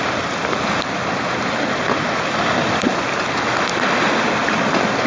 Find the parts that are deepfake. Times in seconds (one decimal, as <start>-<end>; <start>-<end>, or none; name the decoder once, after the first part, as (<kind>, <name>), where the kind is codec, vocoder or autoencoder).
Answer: none